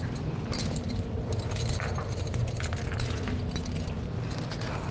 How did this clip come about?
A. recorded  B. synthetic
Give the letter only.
A